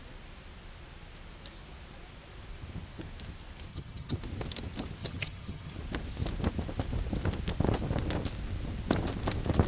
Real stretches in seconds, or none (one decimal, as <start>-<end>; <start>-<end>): 0.0-3.7; 4.2-5.0; 5.7-9.7